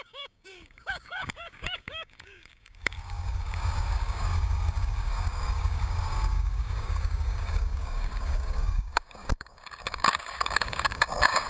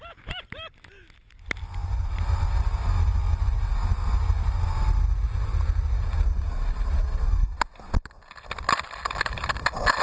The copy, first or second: first